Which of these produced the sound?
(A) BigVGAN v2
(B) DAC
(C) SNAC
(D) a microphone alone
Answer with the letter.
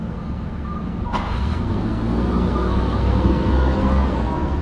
C